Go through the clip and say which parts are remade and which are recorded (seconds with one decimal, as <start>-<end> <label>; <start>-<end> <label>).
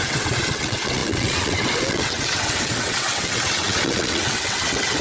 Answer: 0.0-5.0 remade